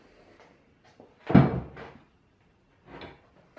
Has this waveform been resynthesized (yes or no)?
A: no